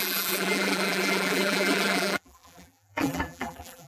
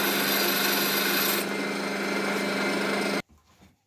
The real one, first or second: second